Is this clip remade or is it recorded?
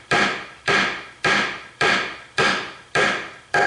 remade